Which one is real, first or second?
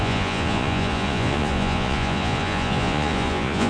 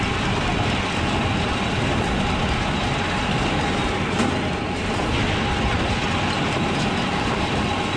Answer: second